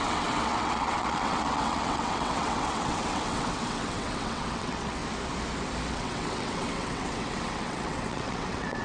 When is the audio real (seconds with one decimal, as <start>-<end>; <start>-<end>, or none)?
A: 5.0-5.9